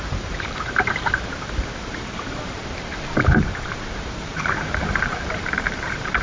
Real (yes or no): no